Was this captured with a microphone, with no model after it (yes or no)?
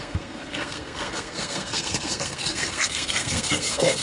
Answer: no